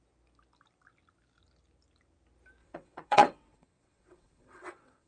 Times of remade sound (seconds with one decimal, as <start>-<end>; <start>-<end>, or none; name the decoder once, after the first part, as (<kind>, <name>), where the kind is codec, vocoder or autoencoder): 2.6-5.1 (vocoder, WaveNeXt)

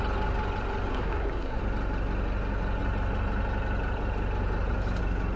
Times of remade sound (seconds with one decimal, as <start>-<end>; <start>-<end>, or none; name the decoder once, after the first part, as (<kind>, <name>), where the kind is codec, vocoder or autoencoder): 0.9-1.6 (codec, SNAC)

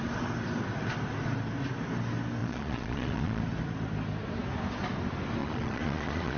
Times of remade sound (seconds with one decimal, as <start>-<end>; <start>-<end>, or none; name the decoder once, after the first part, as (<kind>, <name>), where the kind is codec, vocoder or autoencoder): 2.4-3.4 (vocoder, Vocos); 5.4-6.4